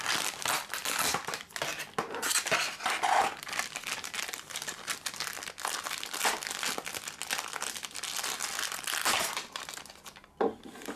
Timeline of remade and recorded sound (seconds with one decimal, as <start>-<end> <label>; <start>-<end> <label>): 0.0-11.0 recorded